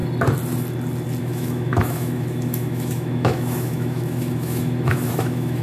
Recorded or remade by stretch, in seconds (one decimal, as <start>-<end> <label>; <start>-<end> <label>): 0.0-1.2 recorded; 1.2-5.6 remade